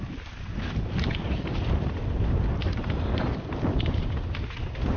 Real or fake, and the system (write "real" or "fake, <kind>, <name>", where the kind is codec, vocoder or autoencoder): real